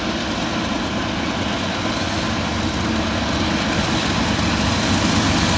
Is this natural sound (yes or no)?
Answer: yes